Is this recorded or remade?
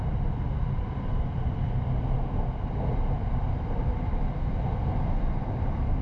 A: remade